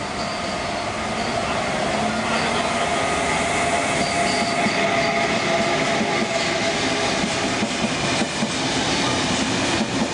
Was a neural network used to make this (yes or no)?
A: no